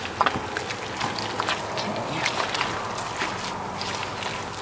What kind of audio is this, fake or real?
real